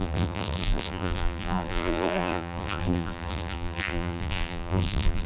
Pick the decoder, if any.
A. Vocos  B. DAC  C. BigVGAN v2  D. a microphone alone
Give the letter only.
C